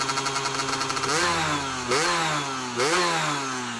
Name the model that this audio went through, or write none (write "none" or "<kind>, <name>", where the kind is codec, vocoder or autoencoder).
none